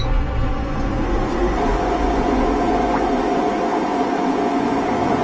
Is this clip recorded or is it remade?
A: remade